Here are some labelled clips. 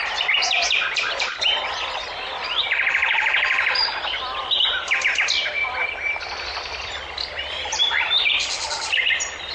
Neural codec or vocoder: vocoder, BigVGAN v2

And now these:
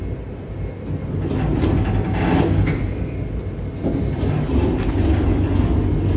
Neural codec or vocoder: none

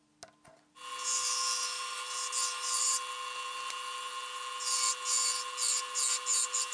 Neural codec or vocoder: none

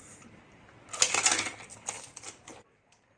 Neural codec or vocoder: none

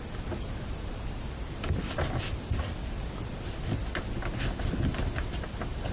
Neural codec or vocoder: none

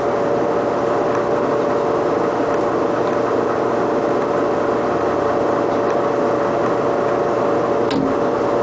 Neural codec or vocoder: none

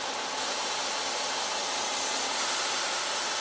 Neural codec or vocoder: none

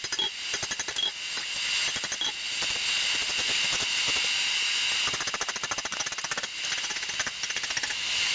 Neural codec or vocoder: none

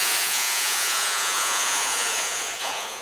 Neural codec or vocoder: vocoder, Vocos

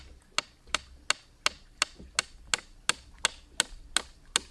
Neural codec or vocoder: none